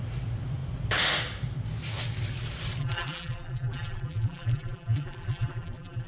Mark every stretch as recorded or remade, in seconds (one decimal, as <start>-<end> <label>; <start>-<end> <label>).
0.0-2.8 recorded; 2.8-6.1 remade

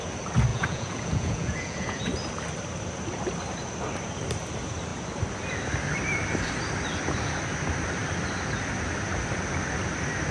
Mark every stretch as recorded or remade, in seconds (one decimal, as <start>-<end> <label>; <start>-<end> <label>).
0.0-0.5 recorded; 0.5-2.0 remade; 2.0-10.3 recorded